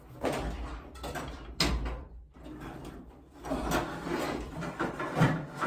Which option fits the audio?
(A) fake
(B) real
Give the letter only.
B